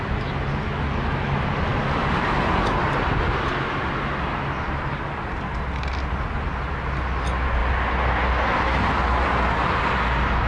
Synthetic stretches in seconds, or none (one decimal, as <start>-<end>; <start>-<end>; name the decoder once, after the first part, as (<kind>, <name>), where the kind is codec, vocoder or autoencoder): none